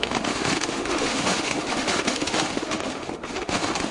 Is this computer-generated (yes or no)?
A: yes